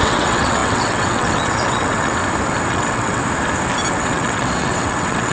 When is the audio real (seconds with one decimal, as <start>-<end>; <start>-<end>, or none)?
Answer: 2.2-2.7; 3.2-3.9